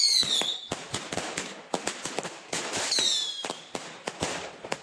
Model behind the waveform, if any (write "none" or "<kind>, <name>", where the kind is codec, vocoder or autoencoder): none